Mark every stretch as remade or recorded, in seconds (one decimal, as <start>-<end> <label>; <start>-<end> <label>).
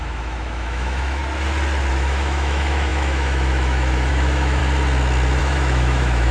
0.0-1.2 remade; 1.2-1.9 recorded; 1.9-4.6 remade; 4.6-5.4 recorded; 5.4-6.3 remade